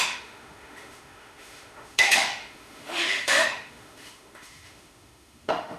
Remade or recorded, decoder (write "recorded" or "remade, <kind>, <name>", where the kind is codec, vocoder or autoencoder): remade, autoencoder, DAC-VAE